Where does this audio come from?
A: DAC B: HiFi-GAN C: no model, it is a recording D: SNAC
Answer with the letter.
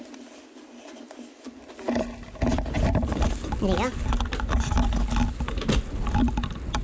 C